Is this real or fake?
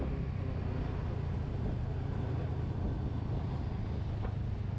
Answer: real